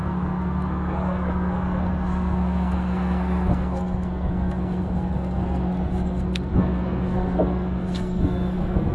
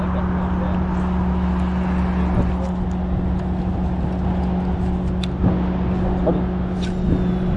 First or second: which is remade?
first